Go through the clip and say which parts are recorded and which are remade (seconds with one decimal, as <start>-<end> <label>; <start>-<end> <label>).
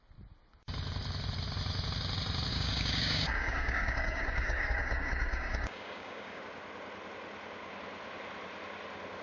0.0-2.5 recorded; 2.5-6.4 remade; 6.4-9.2 recorded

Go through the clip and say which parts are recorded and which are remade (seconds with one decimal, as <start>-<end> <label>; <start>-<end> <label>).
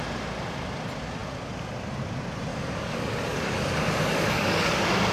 0.0-2.5 recorded; 2.5-5.1 remade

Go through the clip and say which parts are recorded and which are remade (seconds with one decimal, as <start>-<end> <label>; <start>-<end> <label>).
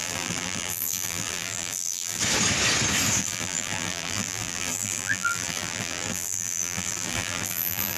0.0-2.2 remade; 2.2-3.2 recorded; 3.2-8.0 remade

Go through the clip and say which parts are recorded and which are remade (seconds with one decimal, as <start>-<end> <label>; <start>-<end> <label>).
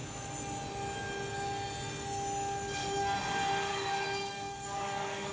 0.0-3.7 recorded; 3.7-5.3 remade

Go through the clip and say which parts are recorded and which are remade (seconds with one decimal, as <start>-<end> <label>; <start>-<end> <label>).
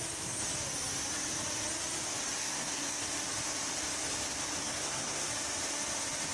0.0-2.4 recorded; 2.4-3.0 remade; 3.0-4.6 recorded; 4.6-5.3 remade; 5.3-6.3 recorded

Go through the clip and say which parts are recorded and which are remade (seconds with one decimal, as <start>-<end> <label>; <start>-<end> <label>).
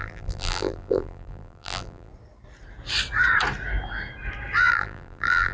0.0-2.1 remade; 2.1-4.7 recorded; 4.7-5.5 remade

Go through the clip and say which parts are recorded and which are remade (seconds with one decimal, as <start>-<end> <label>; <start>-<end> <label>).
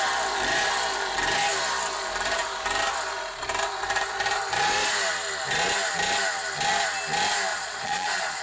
0.0-7.5 recorded; 7.5-8.4 remade